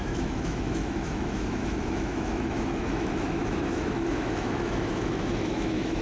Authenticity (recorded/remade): remade